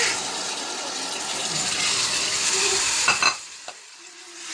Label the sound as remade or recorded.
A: remade